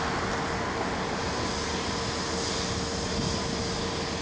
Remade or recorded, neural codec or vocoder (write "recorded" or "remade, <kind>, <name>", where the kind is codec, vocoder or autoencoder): recorded